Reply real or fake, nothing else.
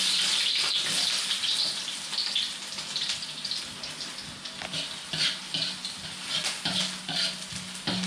real